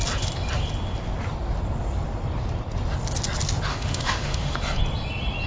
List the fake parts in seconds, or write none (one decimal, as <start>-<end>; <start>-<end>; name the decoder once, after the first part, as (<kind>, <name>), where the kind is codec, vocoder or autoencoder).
3.7-4.6 (autoencoder, DAC-VAE)